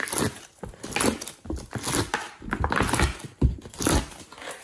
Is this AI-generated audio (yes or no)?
no